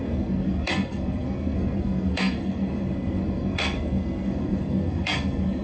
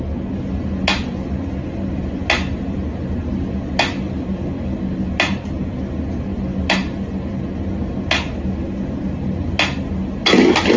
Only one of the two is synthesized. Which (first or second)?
first